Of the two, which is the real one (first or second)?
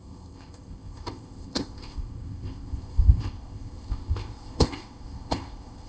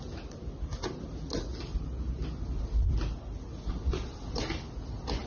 second